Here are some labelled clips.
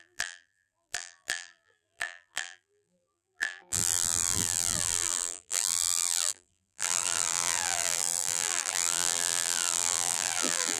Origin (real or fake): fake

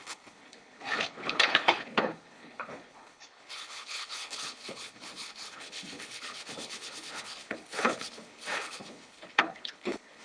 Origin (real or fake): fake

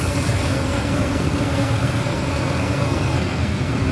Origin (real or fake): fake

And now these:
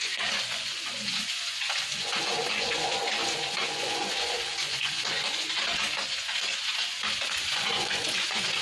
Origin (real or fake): fake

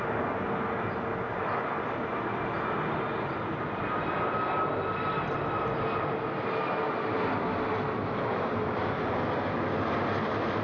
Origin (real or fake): real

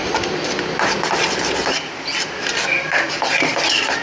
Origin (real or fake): real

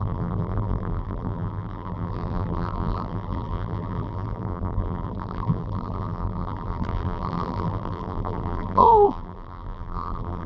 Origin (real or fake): fake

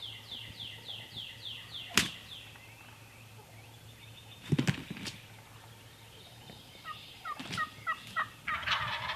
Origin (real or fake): real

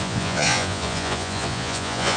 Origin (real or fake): fake